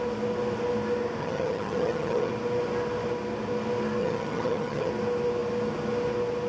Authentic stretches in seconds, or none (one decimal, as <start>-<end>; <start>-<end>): 0.0-1.2; 2.3-4.0; 4.9-6.5